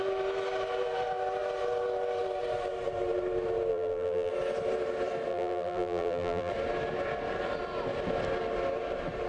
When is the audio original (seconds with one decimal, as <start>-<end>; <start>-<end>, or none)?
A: 0.0-3.7; 4.3-5.3; 6.5-9.3